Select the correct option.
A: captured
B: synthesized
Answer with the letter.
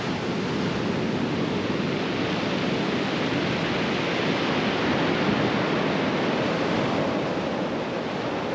A